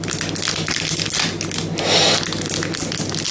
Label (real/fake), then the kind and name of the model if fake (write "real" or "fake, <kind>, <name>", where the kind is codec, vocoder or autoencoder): real